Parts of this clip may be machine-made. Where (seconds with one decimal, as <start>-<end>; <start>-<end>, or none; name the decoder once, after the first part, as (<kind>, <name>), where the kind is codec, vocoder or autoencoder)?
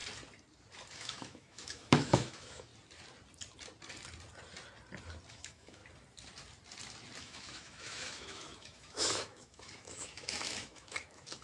0.9-2.7 (autoencoder, DAC-VAE); 5.3-5.8; 7.2-11.4